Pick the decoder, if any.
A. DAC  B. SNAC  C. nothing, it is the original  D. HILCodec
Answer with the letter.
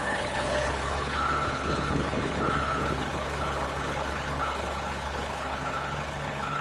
D